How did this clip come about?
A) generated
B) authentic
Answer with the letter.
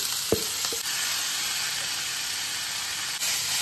B